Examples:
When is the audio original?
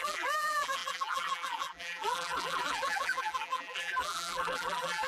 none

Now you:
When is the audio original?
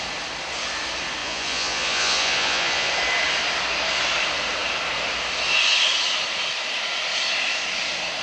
0.0-1.2; 2.9-8.2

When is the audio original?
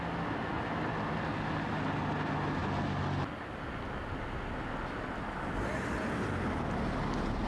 0.0-7.5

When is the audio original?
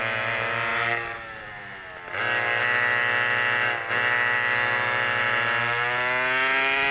0.0-6.9